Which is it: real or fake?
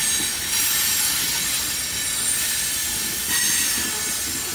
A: real